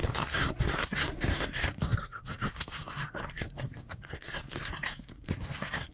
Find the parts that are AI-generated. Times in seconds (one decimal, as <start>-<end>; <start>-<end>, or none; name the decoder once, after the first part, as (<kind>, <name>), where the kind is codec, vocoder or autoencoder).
0.0-5.9 (codec, SNAC)